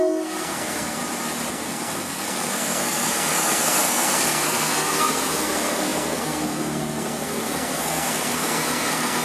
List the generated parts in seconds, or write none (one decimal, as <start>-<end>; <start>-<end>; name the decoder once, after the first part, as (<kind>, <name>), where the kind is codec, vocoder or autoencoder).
0.0-1.0 (codec, SNAC); 1.5-9.2